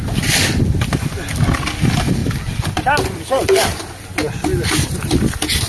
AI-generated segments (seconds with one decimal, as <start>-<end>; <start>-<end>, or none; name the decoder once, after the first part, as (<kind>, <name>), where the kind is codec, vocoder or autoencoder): none